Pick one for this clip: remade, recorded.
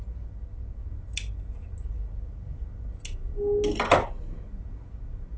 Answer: recorded